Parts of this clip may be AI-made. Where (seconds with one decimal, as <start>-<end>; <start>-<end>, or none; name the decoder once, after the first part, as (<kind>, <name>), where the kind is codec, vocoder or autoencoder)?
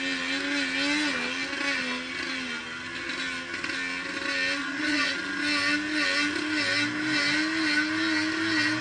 4.6-5.2 (vocoder, Vocos)